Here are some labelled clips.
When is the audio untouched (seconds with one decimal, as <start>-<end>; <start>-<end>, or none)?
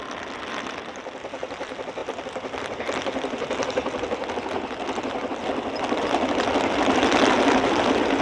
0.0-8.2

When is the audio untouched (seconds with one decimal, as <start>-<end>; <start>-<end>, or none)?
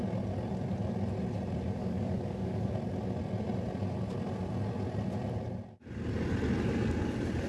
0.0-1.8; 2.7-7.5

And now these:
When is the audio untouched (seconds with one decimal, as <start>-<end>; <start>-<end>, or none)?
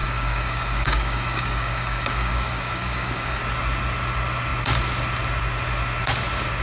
3.4-6.6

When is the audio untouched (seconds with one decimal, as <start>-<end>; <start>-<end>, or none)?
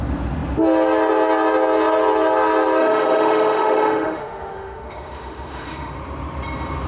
0.0-2.8; 5.9-6.9